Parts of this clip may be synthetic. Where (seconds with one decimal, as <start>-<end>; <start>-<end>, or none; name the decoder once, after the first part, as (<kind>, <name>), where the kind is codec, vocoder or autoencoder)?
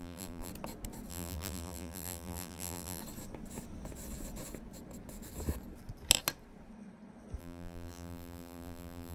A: 0.0-0.5 (vocoder, BigVGAN v2); 1.1-3.0; 7.4-9.1